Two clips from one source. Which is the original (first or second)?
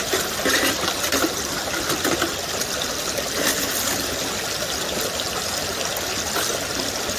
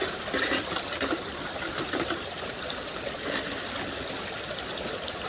first